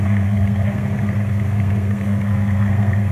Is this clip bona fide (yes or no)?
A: no